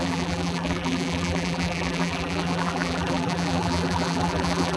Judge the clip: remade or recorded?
remade